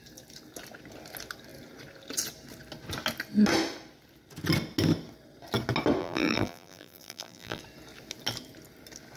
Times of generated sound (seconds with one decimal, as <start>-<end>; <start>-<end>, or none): 6.0-7.6